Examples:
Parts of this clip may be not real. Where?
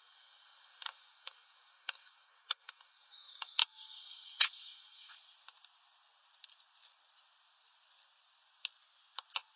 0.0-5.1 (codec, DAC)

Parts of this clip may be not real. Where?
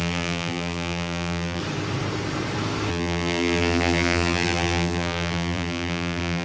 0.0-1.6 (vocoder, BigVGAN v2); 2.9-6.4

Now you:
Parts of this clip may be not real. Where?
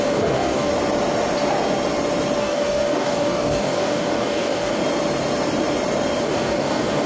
0.0-0.7 (codec, DAC); 2.4-4.8; 6.2-7.1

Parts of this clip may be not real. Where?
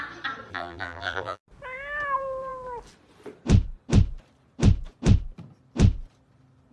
0.5-1.4 (vocoder, BigVGAN v2)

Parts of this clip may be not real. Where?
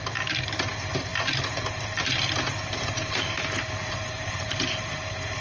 1.1-1.7 (vocoder, BigVGAN v2); 2.6-5.0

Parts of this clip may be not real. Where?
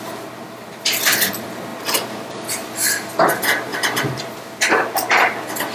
3.7-4.2 (vocoder, BigVGAN v2)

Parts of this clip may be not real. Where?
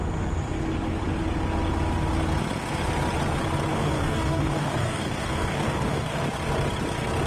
3.7-6.2 (codec, DAC)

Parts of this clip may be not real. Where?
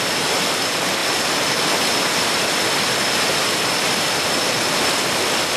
none